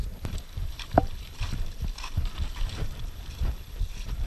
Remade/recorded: remade